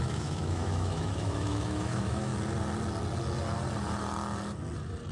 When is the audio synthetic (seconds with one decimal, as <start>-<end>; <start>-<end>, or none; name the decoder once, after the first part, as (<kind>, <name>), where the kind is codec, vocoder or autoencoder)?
0.0-2.3 (autoencoder, DAC-VAE)